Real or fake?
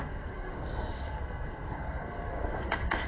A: fake